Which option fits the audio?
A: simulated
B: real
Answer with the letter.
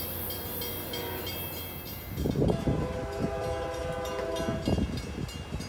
B